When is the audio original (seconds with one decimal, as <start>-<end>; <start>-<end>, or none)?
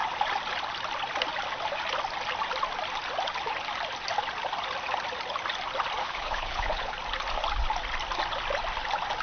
0.0-6.0; 6.9-9.2